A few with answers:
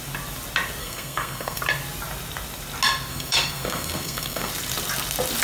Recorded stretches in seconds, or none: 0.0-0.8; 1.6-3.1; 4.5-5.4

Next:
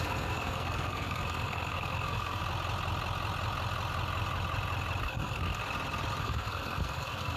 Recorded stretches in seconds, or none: 2.4-5.0; 5.6-6.2

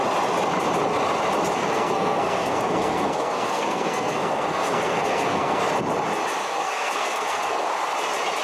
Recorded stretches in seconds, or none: 0.0-1.6; 5.6-6.4; 7.7-8.4

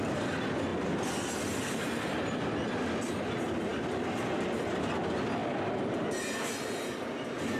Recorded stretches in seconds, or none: 0.0-7.6